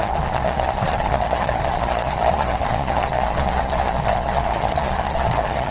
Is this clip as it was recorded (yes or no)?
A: no